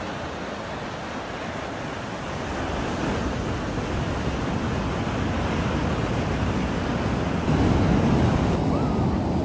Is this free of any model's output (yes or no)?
yes